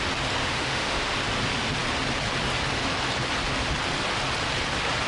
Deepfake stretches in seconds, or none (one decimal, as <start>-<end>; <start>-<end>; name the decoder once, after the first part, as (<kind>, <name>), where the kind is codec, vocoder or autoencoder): 0.4-1.1 (autoencoder, DAC-VAE)